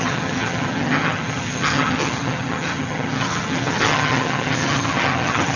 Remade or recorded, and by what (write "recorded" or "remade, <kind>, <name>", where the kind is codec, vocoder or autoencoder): remade, vocoder, HiFi-GAN